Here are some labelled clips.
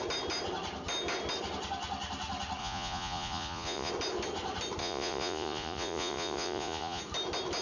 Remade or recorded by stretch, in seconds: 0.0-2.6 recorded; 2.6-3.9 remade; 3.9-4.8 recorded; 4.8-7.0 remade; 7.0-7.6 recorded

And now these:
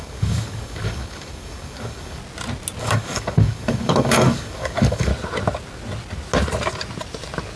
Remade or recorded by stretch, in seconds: 0.0-2.2 remade; 2.2-2.8 recorded; 2.8-5.1 remade; 5.1-7.6 recorded

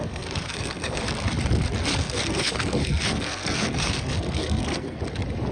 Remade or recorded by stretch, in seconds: 0.0-1.0 remade; 1.0-1.9 recorded; 1.9-5.0 remade; 5.0-5.5 recorded